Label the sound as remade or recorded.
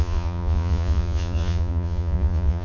remade